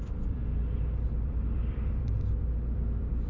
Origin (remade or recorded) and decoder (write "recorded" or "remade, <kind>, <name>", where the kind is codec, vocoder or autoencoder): remade, vocoder, BigVGAN v2